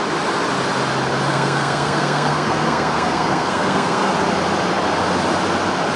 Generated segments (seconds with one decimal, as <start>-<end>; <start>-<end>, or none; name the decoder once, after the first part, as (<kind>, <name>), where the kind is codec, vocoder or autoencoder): 1.3-4.1 (codec, SNAC)